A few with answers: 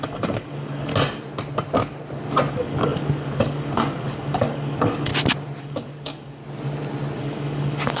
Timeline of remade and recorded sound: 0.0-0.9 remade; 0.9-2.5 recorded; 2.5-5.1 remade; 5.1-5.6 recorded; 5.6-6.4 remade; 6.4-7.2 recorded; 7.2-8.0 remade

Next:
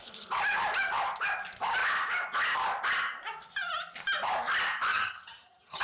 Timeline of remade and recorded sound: 0.0-4.9 recorded; 4.9-5.8 remade

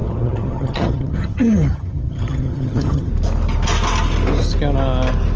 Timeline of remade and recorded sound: 0.0-3.1 remade; 3.1-5.4 recorded

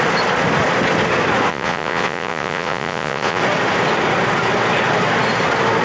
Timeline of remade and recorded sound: 0.0-1.5 recorded; 1.5-3.4 remade; 3.4-5.8 recorded

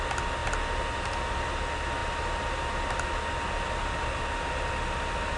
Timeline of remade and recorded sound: 0.0-5.4 recorded

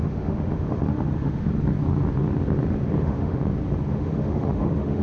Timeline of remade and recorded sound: 0.0-1.5 remade; 1.5-3.0 recorded; 3.0-3.4 remade; 3.4-3.9 recorded; 3.9-5.0 remade

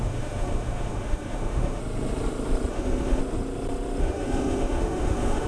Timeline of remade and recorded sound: 0.0-1.8 remade; 1.8-2.7 recorded; 2.7-3.2 remade; 3.2-4.0 recorded; 4.0-5.5 remade